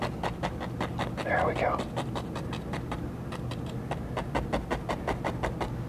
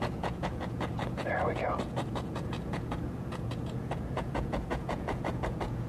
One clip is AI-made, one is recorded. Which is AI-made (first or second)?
second